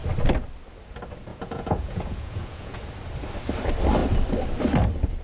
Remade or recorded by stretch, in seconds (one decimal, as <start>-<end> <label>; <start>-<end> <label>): 0.0-1.3 recorded; 1.3-2.8 remade; 2.8-5.2 recorded